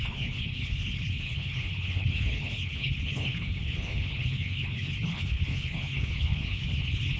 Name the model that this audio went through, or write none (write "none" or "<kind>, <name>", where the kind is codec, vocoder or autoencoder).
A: codec, HILCodec